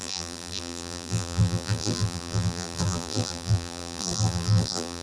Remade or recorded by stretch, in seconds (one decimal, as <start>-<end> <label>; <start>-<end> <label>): 0.0-5.0 remade